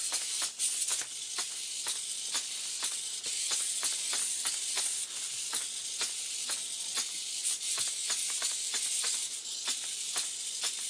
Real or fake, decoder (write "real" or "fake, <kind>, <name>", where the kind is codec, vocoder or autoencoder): real